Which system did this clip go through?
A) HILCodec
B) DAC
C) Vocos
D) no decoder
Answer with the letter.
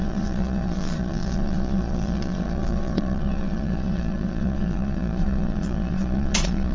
C